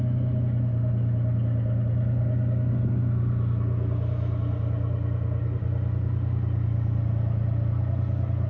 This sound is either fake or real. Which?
real